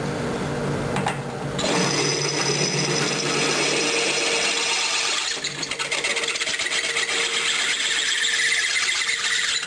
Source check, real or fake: real